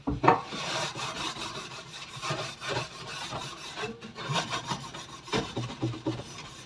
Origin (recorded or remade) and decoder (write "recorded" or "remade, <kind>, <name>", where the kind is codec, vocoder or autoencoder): remade, vocoder, BigVGAN v2